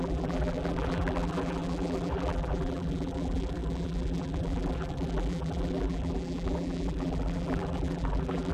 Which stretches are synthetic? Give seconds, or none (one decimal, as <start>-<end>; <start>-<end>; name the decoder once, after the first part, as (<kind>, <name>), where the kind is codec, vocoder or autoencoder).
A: 0.0-8.5 (vocoder, BigVGAN v2)